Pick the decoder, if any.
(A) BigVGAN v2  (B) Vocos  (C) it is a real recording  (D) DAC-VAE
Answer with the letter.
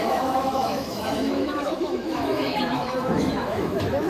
D